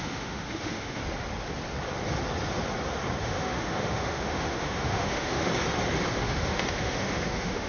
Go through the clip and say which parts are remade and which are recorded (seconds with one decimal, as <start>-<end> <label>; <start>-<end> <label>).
0.0-1.0 remade; 1.0-3.2 recorded; 3.2-5.5 remade; 5.5-6.2 recorded; 6.2-7.7 remade